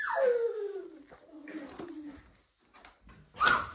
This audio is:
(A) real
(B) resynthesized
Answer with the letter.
A